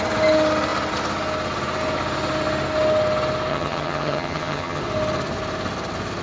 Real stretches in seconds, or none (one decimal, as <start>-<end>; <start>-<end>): 0.0-3.5; 4.8-6.2